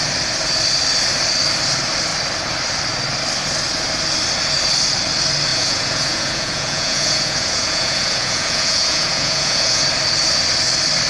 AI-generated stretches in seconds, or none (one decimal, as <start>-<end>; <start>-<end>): 5.5-9.8